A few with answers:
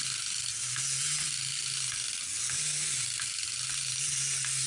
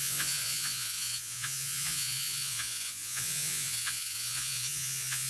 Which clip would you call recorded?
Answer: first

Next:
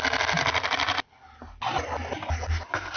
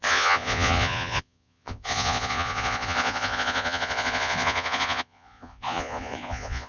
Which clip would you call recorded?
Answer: first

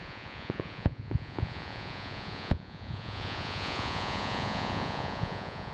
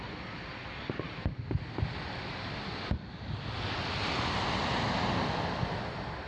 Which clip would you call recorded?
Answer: second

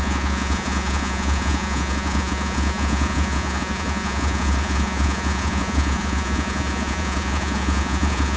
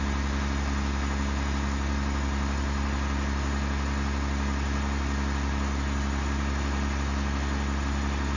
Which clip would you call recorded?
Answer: second